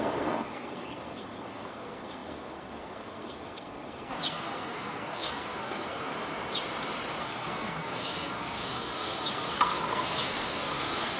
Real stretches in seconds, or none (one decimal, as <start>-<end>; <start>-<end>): 6.1-7.2